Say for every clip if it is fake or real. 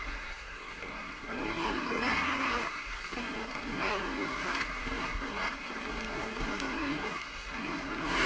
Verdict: fake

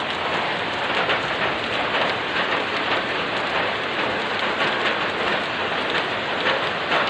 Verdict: real